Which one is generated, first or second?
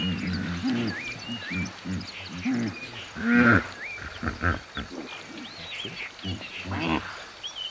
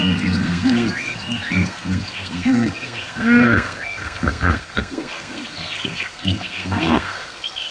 second